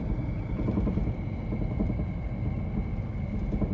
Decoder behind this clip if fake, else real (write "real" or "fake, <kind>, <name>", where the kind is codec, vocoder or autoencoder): real